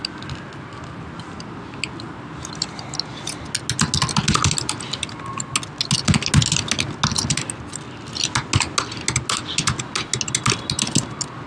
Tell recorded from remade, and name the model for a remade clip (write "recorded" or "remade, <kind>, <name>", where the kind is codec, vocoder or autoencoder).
recorded